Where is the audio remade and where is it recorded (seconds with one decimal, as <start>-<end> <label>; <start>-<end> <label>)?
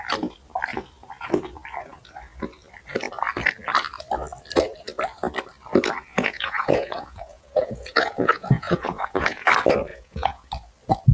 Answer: 0.0-6.1 recorded; 6.1-9.5 remade; 9.5-9.9 recorded; 9.9-10.5 remade; 10.5-11.1 recorded